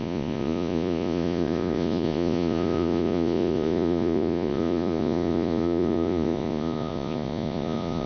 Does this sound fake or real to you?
fake